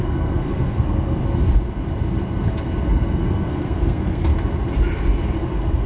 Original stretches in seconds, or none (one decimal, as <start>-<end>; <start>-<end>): 1.2-2.9; 4.3-5.5